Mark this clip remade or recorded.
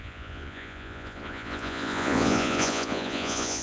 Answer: remade